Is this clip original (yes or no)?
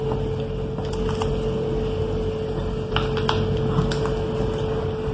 yes